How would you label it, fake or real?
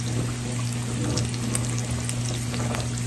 real